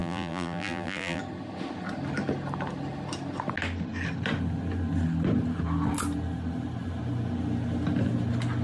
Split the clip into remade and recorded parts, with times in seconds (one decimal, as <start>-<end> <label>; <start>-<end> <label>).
0.0-1.2 remade; 1.2-8.6 recorded